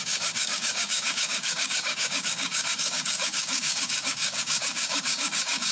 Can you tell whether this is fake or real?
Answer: fake